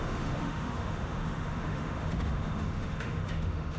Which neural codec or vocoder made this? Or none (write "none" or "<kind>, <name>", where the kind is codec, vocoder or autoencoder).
autoencoder, DAC-VAE